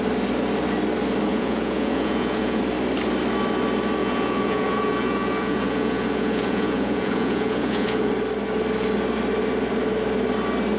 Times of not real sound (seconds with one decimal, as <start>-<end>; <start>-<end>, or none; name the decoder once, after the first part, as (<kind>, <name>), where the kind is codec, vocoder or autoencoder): 1.3-2.6 (vocoder, Vocos); 4.0-8.1